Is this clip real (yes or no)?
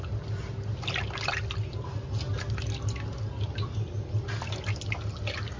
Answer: yes